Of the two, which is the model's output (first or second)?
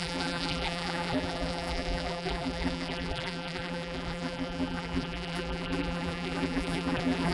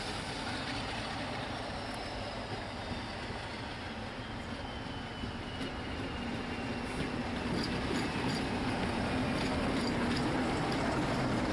first